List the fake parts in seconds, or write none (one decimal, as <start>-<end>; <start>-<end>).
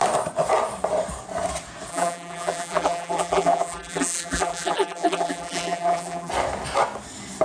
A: 1.9-6.3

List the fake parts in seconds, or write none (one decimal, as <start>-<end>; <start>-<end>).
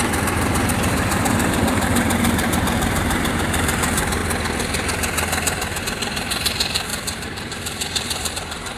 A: 0.0-4.2; 5.8-8.8